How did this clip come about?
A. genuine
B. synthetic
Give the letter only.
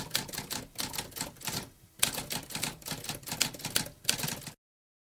A